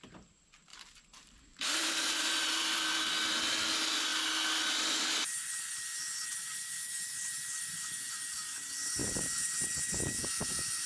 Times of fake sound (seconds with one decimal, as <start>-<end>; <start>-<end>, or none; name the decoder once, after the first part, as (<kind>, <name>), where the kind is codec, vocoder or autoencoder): 0.7-3.0 (vocoder, BigVGAN v2); 9.0-9.5